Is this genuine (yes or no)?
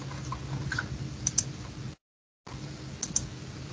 yes